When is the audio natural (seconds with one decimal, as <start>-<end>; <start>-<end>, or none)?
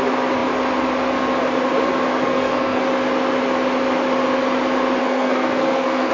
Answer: 0.0-2.1; 2.8-5.0